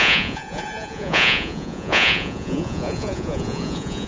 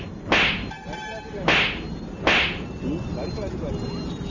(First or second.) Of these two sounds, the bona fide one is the second